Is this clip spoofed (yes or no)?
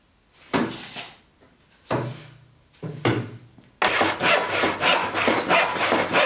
no